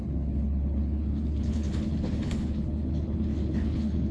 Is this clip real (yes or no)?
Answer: no